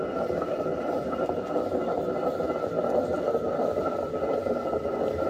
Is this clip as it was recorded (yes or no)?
yes